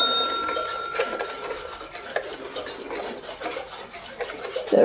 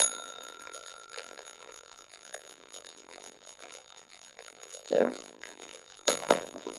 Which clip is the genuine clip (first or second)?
first